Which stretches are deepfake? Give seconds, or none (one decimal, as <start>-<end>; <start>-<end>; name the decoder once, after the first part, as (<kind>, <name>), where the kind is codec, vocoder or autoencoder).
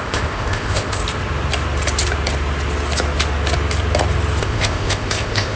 0.0-1.0 (codec, ZipCodec); 4.4-5.6